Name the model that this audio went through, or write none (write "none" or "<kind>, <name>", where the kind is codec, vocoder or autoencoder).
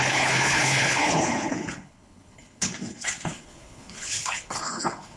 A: codec, HILCodec